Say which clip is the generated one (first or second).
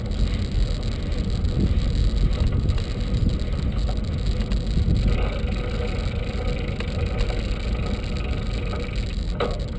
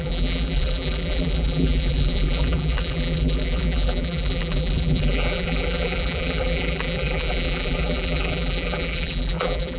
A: second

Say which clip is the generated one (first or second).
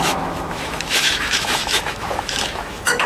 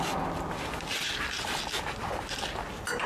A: first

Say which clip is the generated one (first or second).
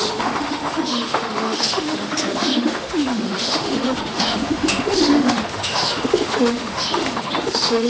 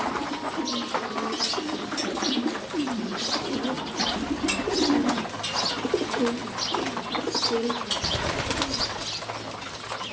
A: first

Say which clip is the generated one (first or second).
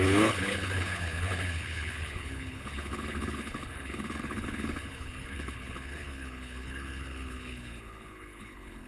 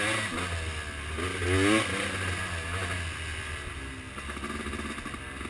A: first